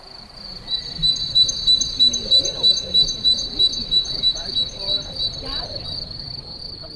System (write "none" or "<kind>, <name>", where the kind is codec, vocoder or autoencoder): none